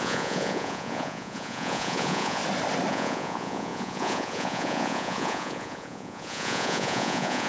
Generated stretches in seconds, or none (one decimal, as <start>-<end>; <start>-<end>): 0.0-2.4; 2.9-7.5